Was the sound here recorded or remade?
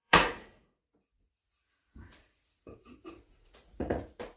remade